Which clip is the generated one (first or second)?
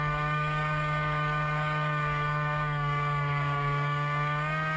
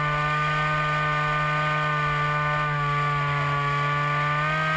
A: first